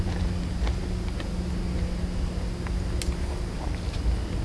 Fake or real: real